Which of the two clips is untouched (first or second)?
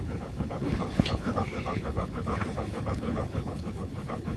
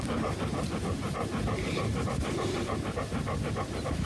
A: second